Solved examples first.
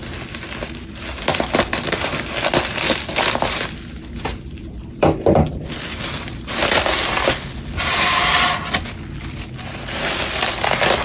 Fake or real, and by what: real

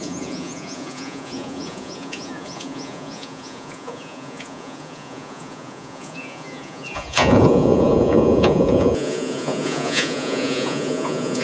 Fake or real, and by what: fake, vocoder, Vocos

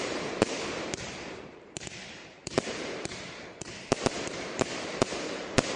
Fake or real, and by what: fake, vocoder, BigVGAN v2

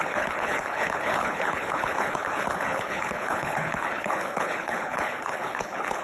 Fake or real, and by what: fake, codec, HILCodec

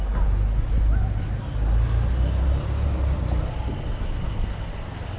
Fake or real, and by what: real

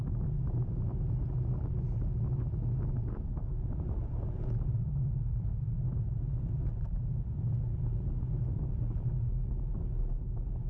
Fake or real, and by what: real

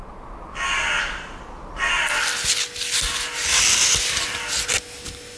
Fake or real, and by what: real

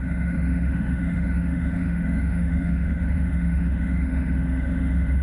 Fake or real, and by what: fake, autoencoder, DAC-VAE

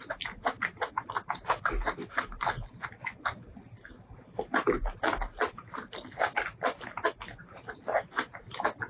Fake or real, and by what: real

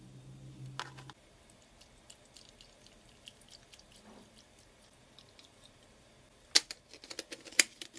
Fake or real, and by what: real